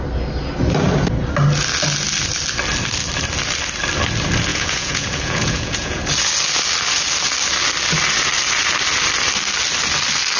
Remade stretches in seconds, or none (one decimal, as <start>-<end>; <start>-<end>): 4.5-6.0